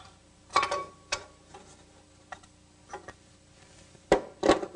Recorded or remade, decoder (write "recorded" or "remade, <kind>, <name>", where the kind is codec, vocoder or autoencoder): recorded